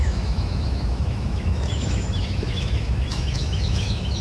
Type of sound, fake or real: fake